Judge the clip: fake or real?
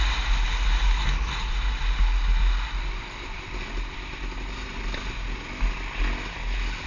real